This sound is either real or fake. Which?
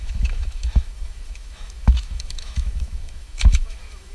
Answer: fake